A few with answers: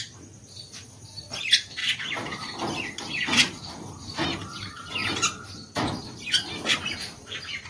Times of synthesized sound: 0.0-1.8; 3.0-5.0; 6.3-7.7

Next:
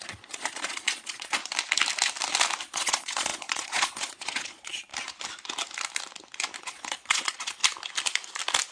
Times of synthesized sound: 0.0-1.4; 2.6-4.9; 6.6-7.6